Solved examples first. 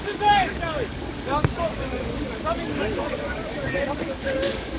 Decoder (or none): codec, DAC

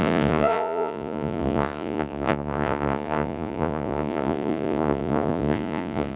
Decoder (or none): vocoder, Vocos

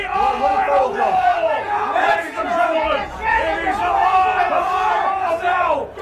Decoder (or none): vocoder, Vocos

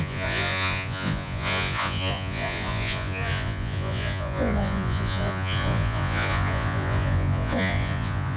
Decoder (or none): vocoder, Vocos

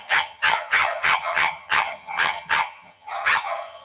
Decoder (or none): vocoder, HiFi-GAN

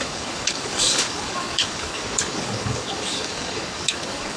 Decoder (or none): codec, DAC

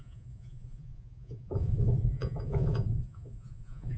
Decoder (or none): vocoder, Vocos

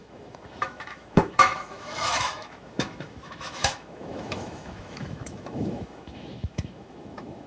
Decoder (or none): autoencoder, DAC-VAE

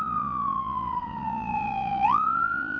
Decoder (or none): vocoder, Vocos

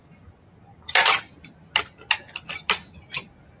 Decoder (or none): none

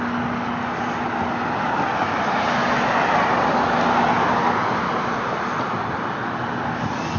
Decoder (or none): none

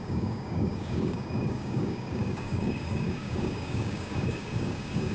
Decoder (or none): codec, DAC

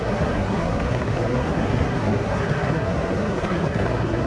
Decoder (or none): codec, SNAC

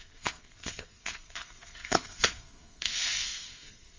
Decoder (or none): codec, SNAC